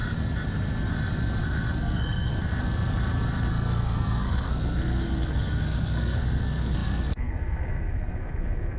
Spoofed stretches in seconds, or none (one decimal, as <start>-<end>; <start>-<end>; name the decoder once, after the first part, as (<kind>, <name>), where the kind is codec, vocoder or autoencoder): 1.8-2.3 (codec, SNAC); 3.5-8.8